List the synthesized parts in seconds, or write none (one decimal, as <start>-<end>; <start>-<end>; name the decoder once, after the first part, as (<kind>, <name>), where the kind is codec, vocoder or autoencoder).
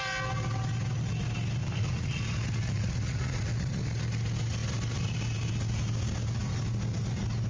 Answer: 1.6-2.2 (vocoder, Vocos); 2.6-3.4